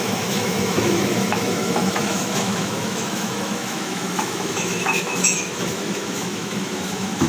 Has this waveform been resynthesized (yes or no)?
yes